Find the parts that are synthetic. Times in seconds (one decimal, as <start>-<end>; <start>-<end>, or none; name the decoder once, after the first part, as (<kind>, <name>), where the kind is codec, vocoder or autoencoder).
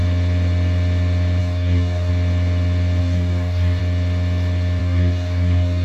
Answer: 1.4-2.1 (codec, DAC); 3.0-3.8; 4.8-5.8